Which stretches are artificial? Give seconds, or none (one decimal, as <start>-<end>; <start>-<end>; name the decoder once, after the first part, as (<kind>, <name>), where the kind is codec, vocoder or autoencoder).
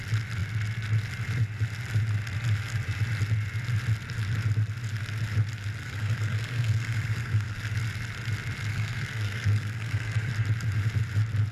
5.8-7.6 (codec, SNAC); 8.7-10.3